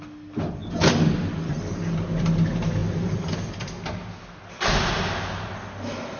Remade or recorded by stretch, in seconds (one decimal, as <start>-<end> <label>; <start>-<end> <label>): 0.0-6.2 recorded